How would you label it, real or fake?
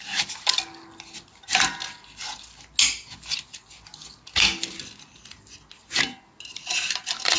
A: real